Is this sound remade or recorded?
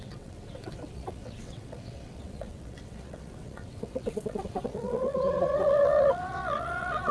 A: remade